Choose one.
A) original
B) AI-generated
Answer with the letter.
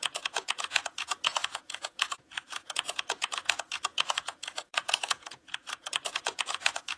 B